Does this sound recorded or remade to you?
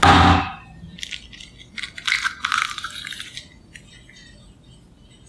recorded